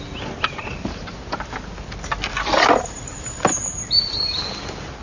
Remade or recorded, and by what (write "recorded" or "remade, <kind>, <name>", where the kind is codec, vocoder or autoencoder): recorded